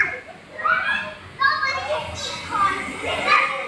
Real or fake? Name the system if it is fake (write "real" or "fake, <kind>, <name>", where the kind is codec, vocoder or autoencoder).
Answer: real